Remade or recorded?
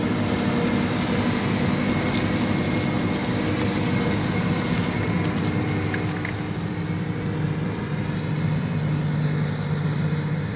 recorded